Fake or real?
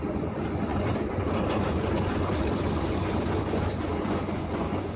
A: fake